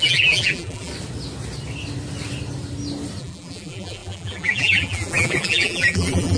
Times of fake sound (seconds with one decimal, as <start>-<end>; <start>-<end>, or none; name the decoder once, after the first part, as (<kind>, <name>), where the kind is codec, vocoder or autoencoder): 0.0-0.9 (vocoder, BigVGAN v2); 3.2-6.4